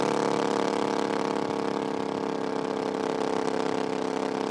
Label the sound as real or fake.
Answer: real